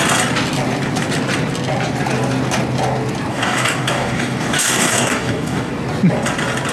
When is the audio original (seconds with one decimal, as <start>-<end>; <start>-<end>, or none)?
0.0-3.3; 5.7-6.7